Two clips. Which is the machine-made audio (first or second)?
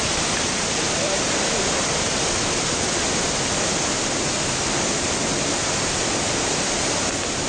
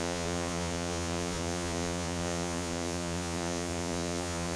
second